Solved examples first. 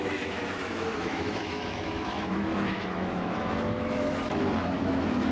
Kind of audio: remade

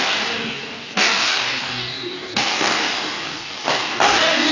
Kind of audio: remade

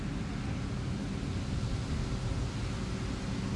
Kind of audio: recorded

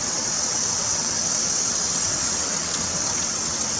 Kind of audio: remade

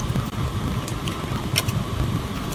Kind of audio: recorded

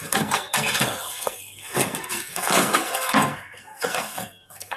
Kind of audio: remade